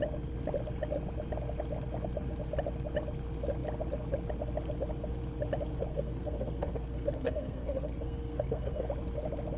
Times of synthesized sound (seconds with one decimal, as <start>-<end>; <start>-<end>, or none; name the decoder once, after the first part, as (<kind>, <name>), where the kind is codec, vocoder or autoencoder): 5.9-8.9 (codec, SNAC)